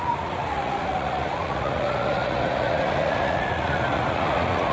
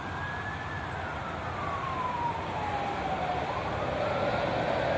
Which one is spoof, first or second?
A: first